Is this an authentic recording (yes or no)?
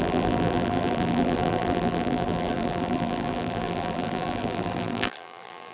no